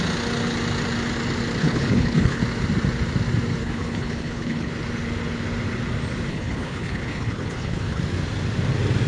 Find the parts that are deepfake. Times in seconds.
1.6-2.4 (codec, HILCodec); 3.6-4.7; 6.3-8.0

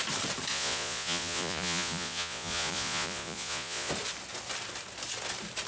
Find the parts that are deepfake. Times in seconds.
0.5-3.9 (vocoder, Vocos)

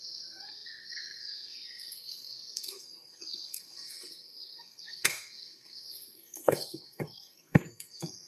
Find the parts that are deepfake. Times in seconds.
0.0-8.3 (codec, SNAC)

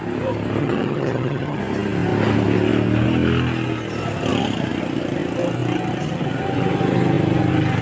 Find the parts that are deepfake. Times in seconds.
0.6-1.6 (vocoder, HiFi-GAN)

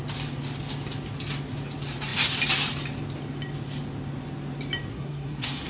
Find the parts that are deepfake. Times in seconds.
4.9-5.7 (codec, SNAC)

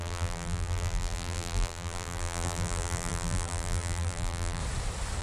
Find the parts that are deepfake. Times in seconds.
0.0-4.6 (vocoder, BigVGAN v2)

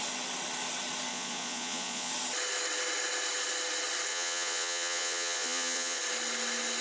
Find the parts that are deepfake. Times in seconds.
1.1-2.1 (vocoder, Vocos); 4.1-6.0

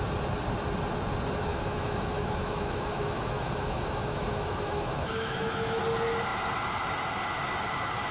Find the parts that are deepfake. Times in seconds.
1.5-5.8 (autoencoder, DAC-VAE)